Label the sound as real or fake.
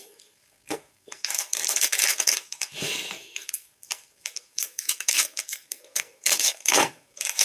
fake